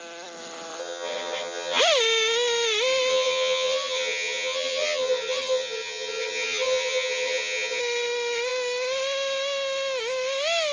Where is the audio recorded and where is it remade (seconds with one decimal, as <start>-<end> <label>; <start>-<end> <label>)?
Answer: 0.0-0.8 recorded; 0.8-1.8 remade; 1.8-3.1 recorded; 3.1-7.8 remade; 7.8-10.7 recorded